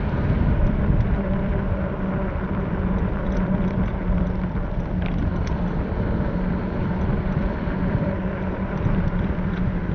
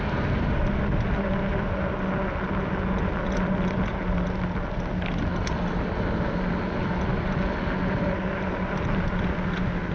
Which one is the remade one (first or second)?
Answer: first